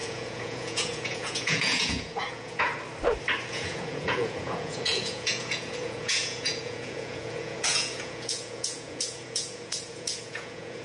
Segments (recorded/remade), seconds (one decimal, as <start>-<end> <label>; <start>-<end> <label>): 0.0-2.7 remade; 2.7-3.5 recorded; 3.5-10.8 remade